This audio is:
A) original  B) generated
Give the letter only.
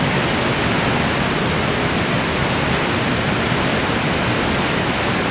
A